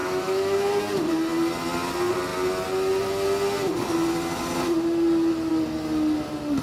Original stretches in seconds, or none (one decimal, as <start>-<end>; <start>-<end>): 0.7-6.6